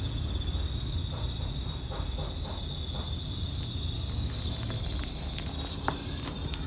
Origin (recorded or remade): recorded